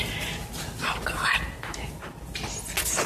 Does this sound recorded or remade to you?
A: recorded